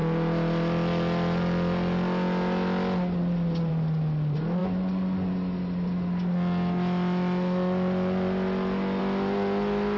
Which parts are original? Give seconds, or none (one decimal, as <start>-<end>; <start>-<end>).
0.0-10.0